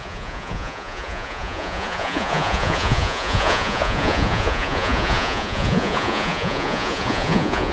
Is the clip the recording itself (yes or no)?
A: no